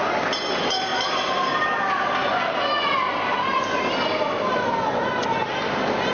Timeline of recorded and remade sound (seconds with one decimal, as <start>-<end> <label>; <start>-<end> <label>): 0.0-6.1 recorded